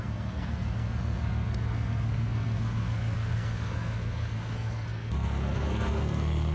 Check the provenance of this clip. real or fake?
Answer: fake